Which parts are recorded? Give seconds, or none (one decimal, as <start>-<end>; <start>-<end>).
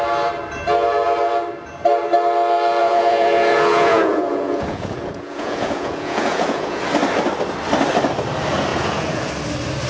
0.0-2.8; 6.8-8.7; 9.3-9.9